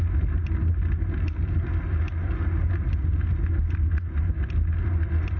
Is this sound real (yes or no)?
yes